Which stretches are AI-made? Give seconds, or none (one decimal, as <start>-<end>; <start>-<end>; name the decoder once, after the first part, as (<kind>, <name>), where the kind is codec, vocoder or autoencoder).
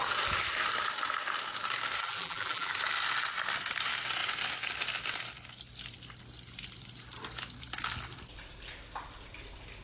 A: 2.0-2.7 (vocoder, BigVGAN v2)